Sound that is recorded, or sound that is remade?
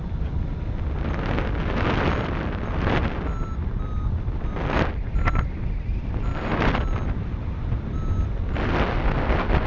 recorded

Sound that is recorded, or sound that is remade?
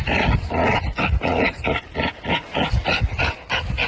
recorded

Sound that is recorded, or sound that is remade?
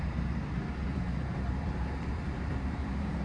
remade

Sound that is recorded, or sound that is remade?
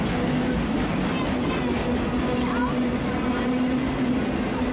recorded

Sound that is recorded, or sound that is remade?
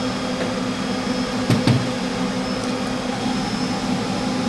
recorded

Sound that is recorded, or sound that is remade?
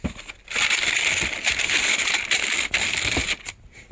recorded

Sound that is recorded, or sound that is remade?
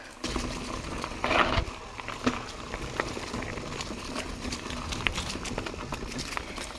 recorded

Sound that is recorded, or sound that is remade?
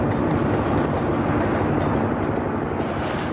recorded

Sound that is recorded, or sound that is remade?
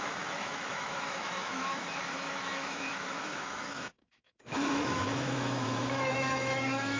remade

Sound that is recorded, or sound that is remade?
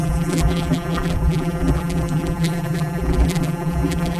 remade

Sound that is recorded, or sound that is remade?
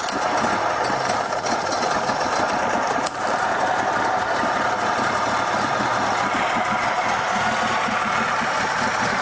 recorded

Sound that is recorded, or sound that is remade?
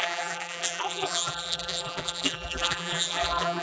remade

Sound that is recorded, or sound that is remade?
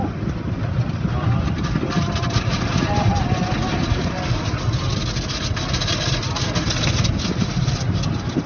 recorded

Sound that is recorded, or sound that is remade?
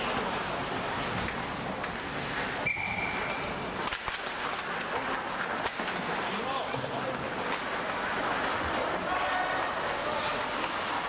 recorded